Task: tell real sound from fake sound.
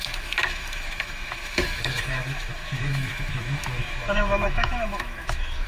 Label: fake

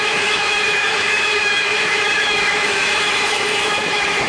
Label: fake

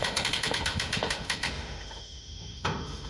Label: fake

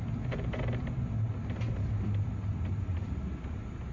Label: real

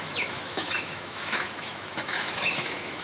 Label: fake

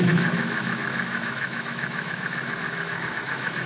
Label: fake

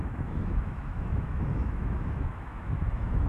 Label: fake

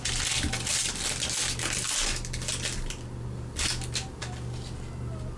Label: real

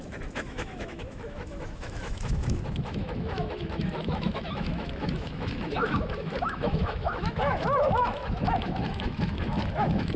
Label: fake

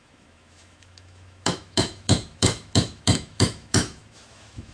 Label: fake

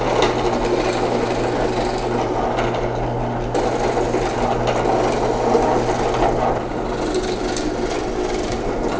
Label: real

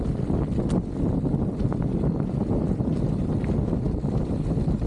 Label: real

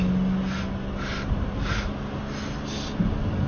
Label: real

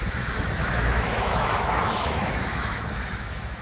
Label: fake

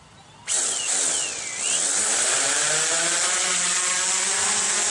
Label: real